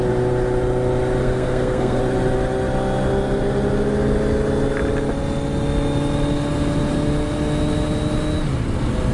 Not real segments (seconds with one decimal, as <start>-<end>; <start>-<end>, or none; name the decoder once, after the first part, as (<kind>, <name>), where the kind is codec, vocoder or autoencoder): 1.2-2.0 (codec, SNAC)